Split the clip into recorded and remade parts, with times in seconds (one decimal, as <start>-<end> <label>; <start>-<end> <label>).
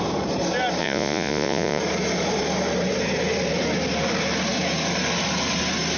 0.0-0.8 recorded; 0.8-1.8 remade; 1.8-6.0 recorded